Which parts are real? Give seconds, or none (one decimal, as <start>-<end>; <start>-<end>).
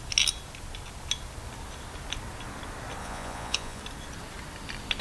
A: 0.0-3.0; 3.8-5.0